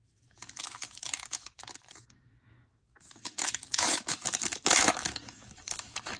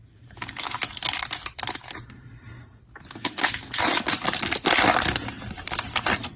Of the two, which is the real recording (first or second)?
second